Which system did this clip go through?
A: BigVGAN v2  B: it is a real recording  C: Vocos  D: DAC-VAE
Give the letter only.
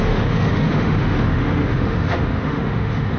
D